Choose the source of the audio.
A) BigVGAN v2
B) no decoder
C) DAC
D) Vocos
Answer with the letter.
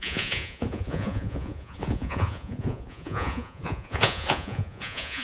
D